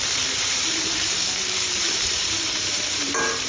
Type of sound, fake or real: fake